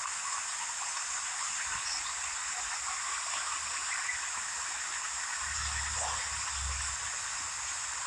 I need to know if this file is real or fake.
real